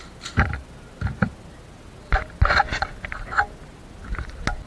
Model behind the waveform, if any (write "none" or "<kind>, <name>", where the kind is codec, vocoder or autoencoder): none